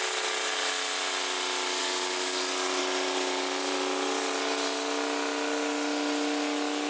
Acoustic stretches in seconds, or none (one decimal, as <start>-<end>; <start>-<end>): 0.0-1.8; 2.8-6.9